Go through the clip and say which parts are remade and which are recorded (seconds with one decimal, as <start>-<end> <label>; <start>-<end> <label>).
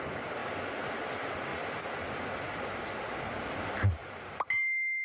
0.0-0.4 recorded; 0.4-1.0 remade; 1.0-1.5 recorded; 1.5-2.1 remade; 2.1-4.0 recorded; 4.0-4.6 remade; 4.6-5.0 recorded